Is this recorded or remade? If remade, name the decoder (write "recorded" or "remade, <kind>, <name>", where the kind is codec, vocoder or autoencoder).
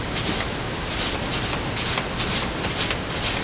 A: recorded